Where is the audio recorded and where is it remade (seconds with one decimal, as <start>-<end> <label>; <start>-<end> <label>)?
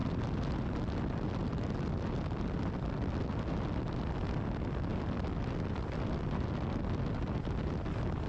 0.0-8.3 recorded